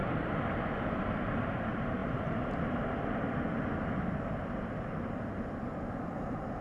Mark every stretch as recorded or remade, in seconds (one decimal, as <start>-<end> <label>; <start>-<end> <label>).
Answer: 0.0-0.8 recorded; 0.8-2.0 remade; 2.0-6.0 recorded; 6.0-6.6 remade